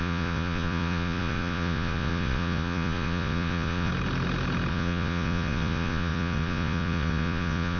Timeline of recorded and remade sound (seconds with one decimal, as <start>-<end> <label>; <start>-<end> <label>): 0.0-3.9 remade; 3.9-4.7 recorded; 4.7-7.8 remade